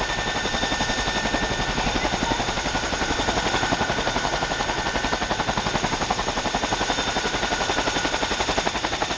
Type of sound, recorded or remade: recorded